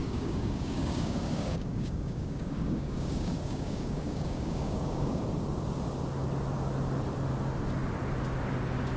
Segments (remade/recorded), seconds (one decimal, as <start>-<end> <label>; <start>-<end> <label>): 0.0-5.2 remade; 5.2-9.0 recorded